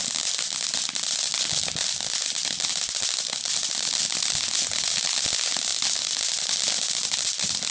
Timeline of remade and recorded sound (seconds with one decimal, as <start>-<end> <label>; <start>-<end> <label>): 0.0-7.7 recorded